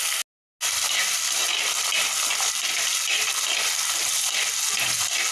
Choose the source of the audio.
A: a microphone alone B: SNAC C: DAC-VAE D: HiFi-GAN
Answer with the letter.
A